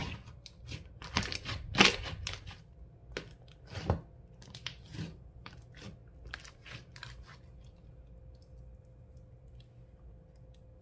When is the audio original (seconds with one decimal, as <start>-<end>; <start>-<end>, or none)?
0.0-10.8